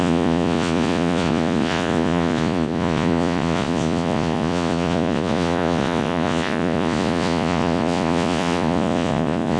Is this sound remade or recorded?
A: remade